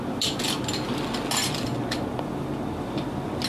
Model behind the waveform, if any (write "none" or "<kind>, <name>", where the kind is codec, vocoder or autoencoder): none